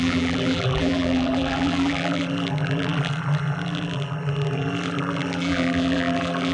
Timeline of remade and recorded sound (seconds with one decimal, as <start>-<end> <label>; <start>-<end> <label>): 0.0-6.5 remade